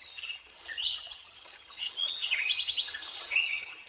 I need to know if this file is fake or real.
fake